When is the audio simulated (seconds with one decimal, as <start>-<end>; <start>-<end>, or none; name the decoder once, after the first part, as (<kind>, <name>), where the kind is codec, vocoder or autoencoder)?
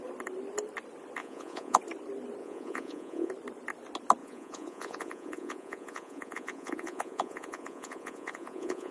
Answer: 1.2-1.8 (vocoder, Vocos); 2.4-3.3; 4.2-8.9